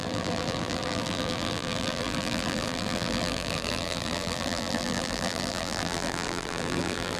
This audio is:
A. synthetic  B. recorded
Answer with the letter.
A